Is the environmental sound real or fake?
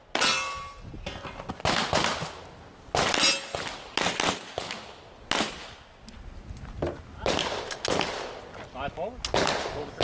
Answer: real